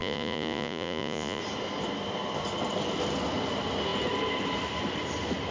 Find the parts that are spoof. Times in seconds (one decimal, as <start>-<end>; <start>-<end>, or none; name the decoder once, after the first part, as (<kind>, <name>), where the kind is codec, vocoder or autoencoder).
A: 0.0-1.4 (vocoder, Vocos)

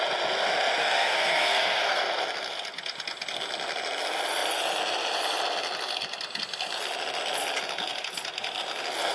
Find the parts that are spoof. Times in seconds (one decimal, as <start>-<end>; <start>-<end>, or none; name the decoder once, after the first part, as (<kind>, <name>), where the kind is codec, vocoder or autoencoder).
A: 0.8-2.0 (codec, SNAC)